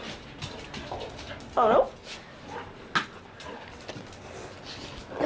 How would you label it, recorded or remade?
recorded